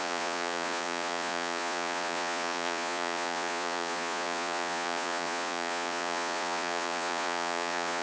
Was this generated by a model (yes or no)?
yes